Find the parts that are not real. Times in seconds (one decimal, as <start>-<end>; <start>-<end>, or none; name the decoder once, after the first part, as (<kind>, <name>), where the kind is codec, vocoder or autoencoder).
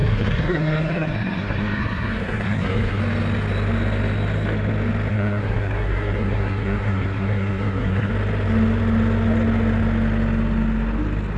0.0-3.0 (codec, SNAC); 5.1-8.1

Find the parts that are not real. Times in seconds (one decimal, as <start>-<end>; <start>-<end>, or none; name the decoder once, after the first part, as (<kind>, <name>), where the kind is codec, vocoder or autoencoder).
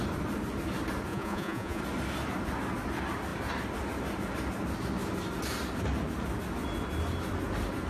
1.1-1.8 (vocoder, Vocos)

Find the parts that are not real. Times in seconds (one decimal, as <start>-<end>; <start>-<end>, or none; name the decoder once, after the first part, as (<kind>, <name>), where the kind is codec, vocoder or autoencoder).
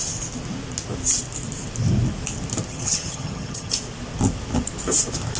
2.7-3.7 (vocoder, HiFi-GAN)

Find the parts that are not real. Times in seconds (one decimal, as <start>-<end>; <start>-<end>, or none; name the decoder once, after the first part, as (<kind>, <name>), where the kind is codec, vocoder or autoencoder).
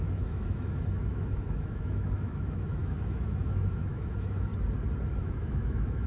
0.0-4.5 (autoencoder, DAC-VAE); 5.2-6.1